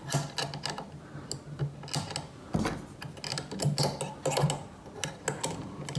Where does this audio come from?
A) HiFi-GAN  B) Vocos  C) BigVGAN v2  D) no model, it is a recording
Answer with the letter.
D